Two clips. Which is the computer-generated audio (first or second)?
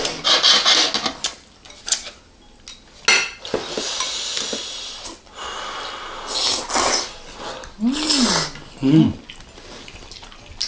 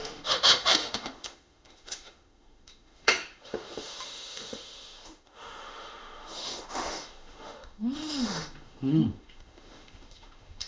second